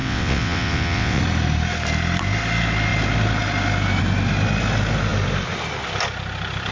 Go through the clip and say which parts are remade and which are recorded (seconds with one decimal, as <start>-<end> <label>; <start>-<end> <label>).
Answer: 0.0-1.2 remade; 1.2-6.7 recorded